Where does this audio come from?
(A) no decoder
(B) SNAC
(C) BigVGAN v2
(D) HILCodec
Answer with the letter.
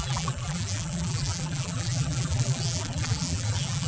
C